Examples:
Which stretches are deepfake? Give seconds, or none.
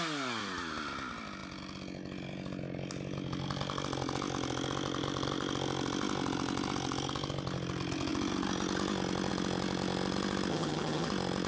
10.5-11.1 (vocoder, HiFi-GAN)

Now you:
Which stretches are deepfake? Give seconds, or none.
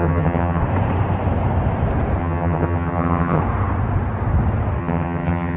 0.0-0.6 (vocoder, HiFi-GAN); 2.2-3.4; 4.8-5.6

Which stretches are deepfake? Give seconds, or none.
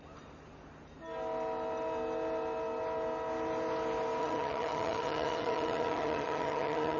4.2-7.0 (vocoder, HiFi-GAN)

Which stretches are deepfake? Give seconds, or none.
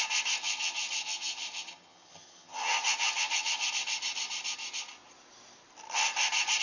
0.4-3.7 (vocoder, HiFi-GAN)